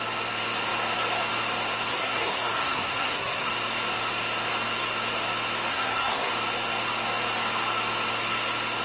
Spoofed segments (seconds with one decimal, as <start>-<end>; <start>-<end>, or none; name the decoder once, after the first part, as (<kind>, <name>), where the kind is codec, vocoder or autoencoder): 1.9-3.5 (codec, SNAC); 5.7-6.3